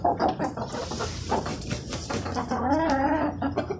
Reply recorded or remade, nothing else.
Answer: remade